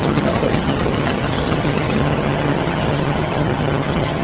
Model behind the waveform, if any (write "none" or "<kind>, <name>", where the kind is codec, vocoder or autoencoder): vocoder, HiFi-GAN